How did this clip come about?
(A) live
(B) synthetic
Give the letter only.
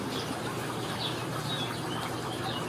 A